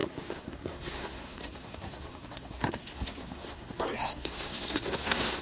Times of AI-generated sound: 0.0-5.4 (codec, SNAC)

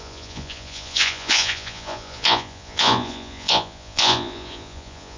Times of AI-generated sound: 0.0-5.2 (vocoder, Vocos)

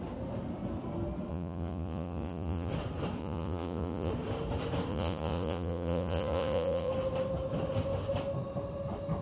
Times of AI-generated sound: 1.3-2.7 (vocoder, Vocos); 3.2-4.1; 4.9-6.9

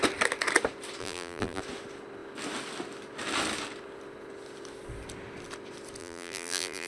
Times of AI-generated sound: 1.0-1.6 (vocoder, BigVGAN v2); 6.0-6.9

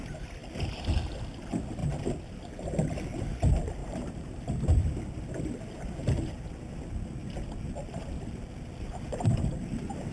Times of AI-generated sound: 3.8-4.4 (vocoder, BigVGAN v2)

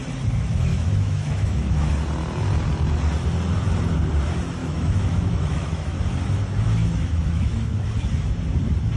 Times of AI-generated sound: 0.7-1.9 (autoencoder, DAC-VAE); 4.6-6.0; 6.8-7.9

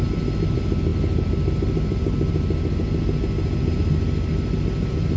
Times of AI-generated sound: none